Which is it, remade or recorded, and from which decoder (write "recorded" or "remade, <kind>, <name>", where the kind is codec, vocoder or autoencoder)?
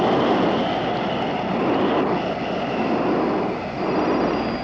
recorded